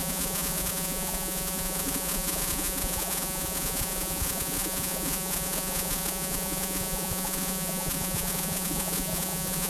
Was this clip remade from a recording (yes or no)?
yes